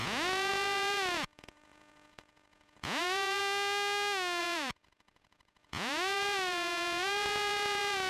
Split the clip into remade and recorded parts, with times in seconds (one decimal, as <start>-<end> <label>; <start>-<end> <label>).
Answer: 0.0-3.4 remade; 3.4-4.4 recorded; 4.4-8.1 remade